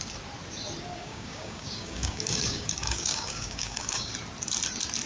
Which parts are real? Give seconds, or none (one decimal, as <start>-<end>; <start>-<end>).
0.0-1.0; 4.1-5.1